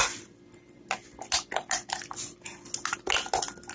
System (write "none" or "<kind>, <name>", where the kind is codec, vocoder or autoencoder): none